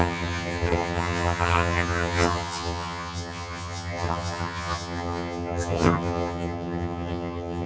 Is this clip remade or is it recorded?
remade